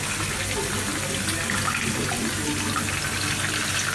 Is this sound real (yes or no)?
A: yes